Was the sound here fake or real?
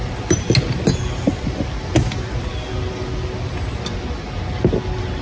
real